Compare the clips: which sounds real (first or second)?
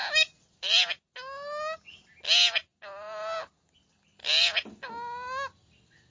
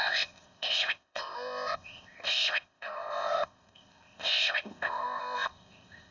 first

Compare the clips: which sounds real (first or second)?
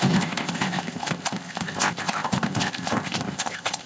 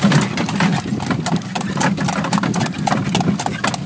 second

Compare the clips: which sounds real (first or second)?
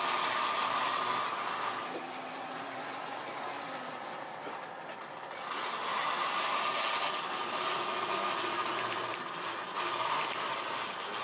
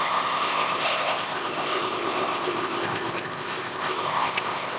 first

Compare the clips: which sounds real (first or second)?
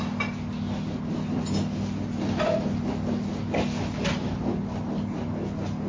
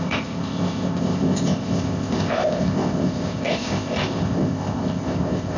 first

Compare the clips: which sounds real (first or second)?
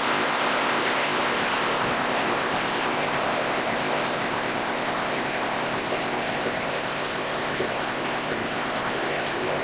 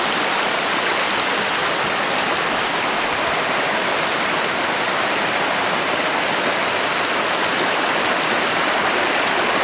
second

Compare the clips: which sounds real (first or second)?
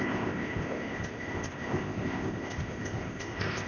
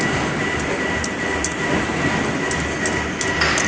second